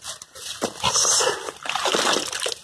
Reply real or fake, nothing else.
real